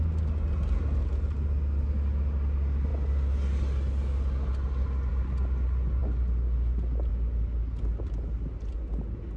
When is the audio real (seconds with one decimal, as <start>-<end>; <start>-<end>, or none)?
0.0-9.4